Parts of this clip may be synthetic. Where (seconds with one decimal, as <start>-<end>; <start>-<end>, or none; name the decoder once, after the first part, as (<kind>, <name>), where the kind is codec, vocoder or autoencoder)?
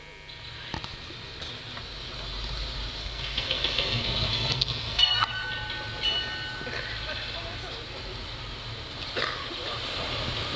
3.0-5.5 (codec, SNAC)